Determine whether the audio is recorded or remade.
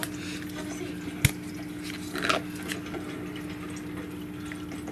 recorded